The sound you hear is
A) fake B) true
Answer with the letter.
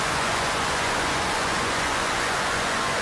A